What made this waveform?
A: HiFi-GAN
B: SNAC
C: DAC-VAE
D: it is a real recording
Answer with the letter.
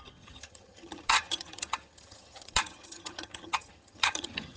A